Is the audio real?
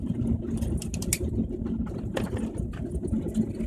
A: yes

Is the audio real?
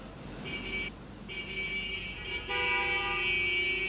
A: yes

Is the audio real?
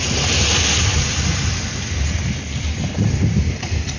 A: yes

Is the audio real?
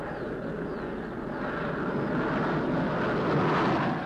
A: yes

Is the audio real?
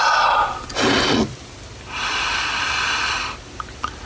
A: yes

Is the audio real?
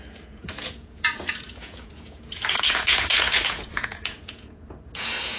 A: no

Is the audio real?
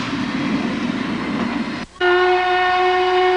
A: yes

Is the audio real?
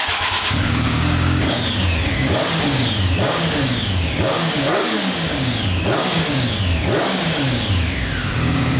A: no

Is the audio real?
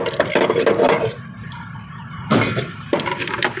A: yes